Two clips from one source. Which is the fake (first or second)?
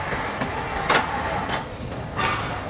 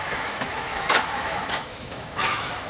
second